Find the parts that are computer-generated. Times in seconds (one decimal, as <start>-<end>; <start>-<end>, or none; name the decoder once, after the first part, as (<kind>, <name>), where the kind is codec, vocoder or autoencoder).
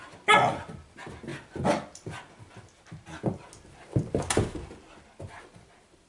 none